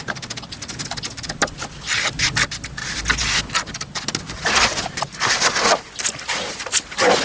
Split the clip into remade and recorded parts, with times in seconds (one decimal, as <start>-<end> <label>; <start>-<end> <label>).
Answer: 0.0-7.2 recorded